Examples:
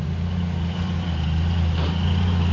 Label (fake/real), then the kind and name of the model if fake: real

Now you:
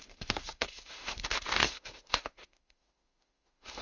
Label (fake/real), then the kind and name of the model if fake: fake, autoencoder, DAC-VAE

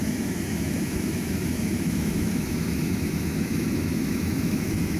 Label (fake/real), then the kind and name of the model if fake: fake, autoencoder, DAC-VAE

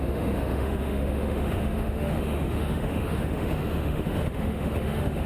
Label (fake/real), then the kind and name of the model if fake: fake, autoencoder, DAC-VAE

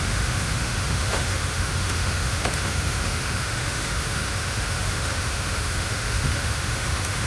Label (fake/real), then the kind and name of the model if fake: fake, autoencoder, DAC-VAE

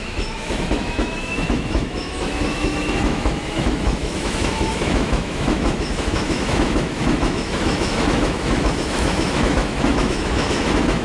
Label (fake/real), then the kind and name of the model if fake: fake, autoencoder, DAC-VAE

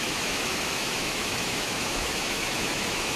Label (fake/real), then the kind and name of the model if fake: fake, autoencoder, DAC-VAE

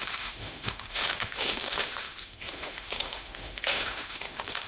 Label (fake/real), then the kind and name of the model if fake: fake, autoencoder, DAC-VAE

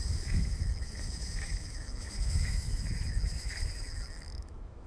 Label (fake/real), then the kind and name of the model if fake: fake, autoencoder, DAC-VAE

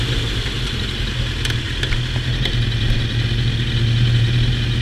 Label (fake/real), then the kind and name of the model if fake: real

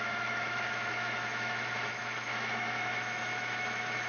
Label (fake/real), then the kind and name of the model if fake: fake, autoencoder, DAC-VAE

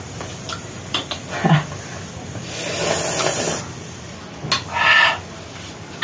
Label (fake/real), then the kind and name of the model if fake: real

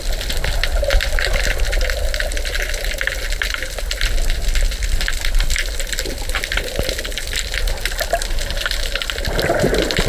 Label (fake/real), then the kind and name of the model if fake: real